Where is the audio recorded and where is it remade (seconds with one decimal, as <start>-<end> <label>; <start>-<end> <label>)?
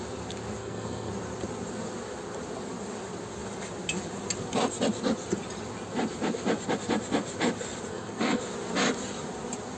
0.0-0.6 recorded; 0.6-1.1 remade; 1.1-7.9 recorded; 7.9-8.4 remade; 8.4-9.8 recorded